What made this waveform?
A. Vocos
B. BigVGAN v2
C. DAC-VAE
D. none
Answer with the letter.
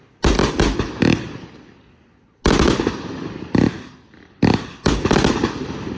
D